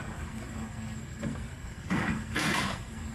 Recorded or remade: remade